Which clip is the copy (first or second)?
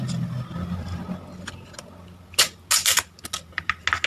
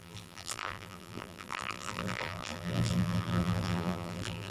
second